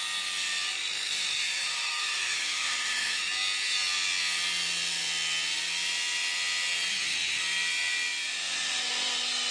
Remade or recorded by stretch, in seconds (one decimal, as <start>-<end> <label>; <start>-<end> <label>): 0.0-0.9 recorded; 0.9-3.3 remade; 3.3-6.9 recorded; 6.9-7.4 remade; 7.4-9.5 recorded